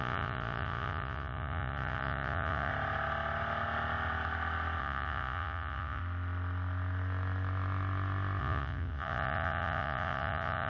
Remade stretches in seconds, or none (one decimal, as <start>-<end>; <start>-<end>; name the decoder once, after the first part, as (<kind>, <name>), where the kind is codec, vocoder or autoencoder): 0.0-2.7 (vocoder, Vocos); 4.8-6.0; 8.4-10.7